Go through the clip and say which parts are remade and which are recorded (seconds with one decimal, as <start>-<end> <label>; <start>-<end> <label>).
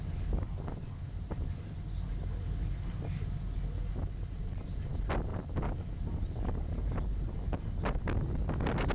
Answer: 0.0-8.9 recorded